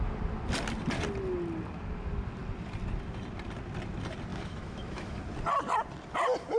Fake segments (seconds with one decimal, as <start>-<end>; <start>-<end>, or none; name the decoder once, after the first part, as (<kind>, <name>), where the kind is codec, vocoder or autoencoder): 4.3-5.2 (autoencoder, DAC-VAE)